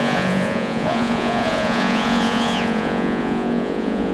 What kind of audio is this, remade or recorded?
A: remade